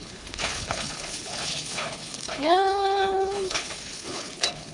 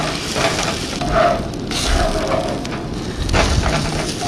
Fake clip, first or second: first